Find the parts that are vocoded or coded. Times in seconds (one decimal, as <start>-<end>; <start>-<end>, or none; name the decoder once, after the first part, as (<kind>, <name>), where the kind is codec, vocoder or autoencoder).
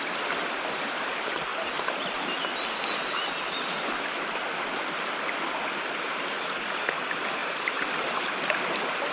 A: 0.0-1.5 (vocoder, BigVGAN v2); 4.0-7.4